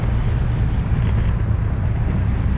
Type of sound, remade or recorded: recorded